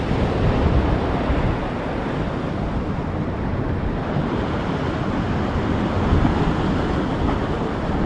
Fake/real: real